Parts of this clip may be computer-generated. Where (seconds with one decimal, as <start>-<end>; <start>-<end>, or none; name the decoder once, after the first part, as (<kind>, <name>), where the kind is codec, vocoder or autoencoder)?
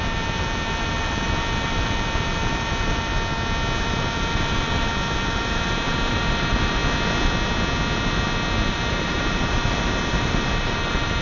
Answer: 0.0-3.1 (vocoder, BigVGAN v2); 3.8-6.8; 8.7-11.2